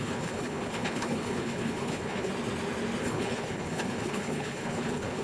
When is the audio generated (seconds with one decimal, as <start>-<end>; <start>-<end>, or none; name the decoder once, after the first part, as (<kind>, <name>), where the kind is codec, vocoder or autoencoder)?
0.0-2.3 (codec, HILCodec); 3.0-5.2